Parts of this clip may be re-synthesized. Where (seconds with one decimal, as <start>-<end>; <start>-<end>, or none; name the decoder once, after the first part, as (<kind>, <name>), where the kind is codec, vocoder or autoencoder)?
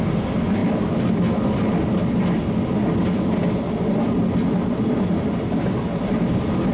none